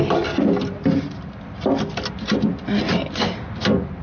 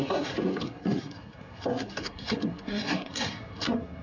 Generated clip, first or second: second